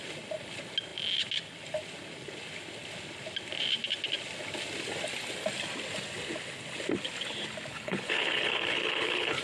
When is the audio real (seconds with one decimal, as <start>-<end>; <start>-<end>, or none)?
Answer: 0.0-7.7